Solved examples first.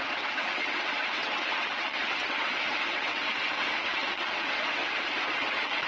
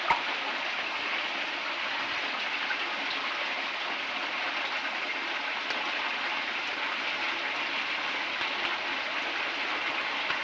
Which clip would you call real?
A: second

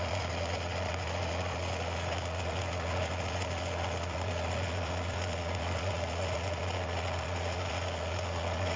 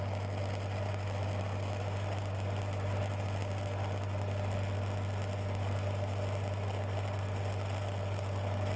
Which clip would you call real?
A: second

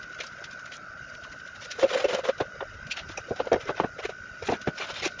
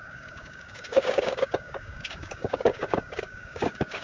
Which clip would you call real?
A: first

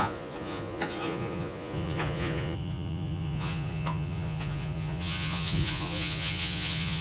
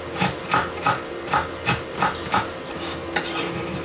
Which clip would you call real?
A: second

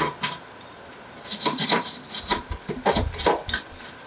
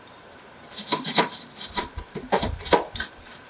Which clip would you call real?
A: first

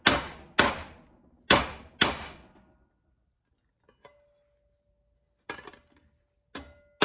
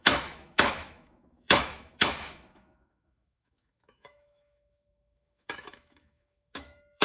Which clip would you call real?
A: first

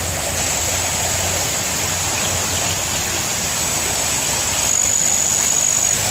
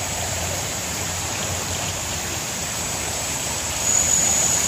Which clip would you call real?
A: first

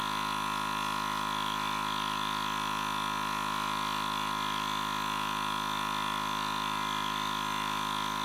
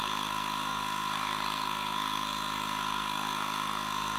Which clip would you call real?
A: first